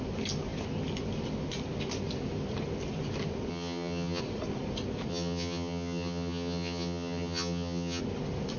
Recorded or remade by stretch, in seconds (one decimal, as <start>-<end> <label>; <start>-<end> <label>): 0.0-3.5 recorded; 3.5-4.2 remade; 4.2-5.1 recorded; 5.1-8.0 remade; 8.0-8.6 recorded